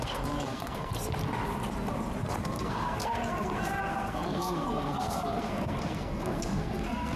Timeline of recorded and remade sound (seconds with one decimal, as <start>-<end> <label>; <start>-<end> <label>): 0.0-0.9 remade; 0.9-2.4 recorded; 2.4-7.2 remade